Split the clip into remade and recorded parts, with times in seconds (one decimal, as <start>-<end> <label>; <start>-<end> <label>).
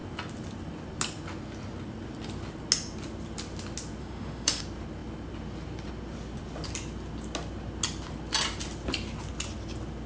0.0-4.0 recorded; 4.0-4.6 remade; 4.6-10.1 recorded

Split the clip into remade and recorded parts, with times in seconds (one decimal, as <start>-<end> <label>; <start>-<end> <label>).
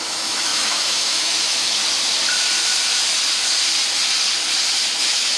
0.0-1.8 remade; 1.8-5.0 recorded; 5.0-5.4 remade